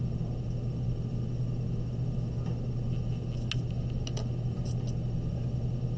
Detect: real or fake real